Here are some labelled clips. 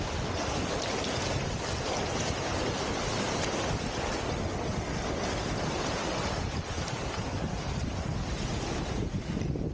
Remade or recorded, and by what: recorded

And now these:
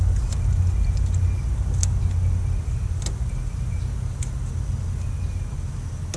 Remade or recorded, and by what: recorded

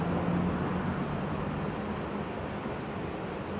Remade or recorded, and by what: recorded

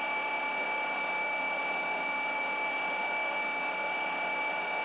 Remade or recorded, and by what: remade, autoencoder, DAC-VAE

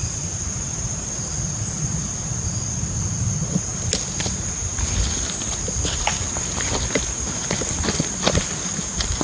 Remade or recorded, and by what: recorded